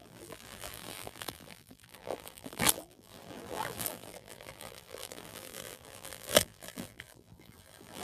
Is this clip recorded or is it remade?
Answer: remade